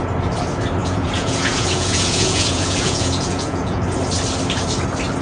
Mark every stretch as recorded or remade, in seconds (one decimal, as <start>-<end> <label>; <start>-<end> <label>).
0.0-0.8 recorded; 0.8-3.8 remade; 3.8-5.2 recorded